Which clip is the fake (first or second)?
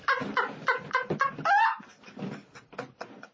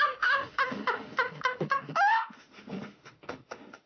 second